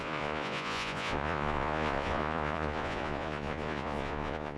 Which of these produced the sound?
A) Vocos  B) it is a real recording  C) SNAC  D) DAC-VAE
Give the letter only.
A